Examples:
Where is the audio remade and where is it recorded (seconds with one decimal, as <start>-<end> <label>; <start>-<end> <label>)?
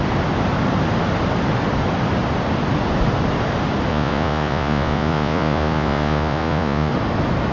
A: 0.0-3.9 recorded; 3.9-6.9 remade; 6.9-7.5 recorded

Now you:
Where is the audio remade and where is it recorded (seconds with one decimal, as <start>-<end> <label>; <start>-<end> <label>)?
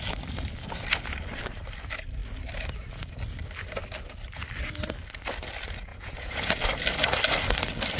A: 0.0-5.9 recorded; 5.9-6.4 remade; 6.4-8.0 recorded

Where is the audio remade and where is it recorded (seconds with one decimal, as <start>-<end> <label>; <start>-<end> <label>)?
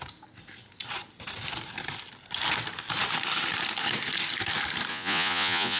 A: 0.0-4.9 recorded; 4.9-5.8 remade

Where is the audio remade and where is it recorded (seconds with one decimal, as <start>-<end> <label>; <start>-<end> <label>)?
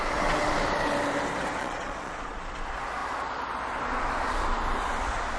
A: 0.0-1.6 recorded; 1.6-2.4 remade; 2.4-5.4 recorded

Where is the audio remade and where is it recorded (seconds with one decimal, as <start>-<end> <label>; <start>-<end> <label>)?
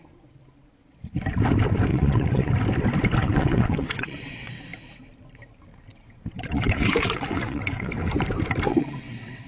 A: 0.0-1.9 recorded; 1.9-2.5 remade; 2.5-3.2 recorded; 3.2-4.5 remade; 4.5-5.9 recorded; 5.9-7.9 remade; 7.9-8.7 recorded; 8.7-9.5 remade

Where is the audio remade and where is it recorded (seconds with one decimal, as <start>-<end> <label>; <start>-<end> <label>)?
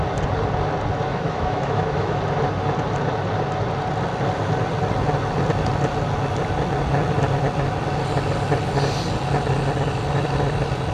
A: 0.0-1.1 recorded; 1.1-2.2 remade; 2.2-10.9 recorded